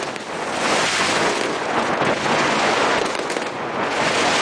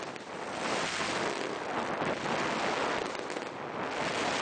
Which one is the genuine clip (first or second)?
second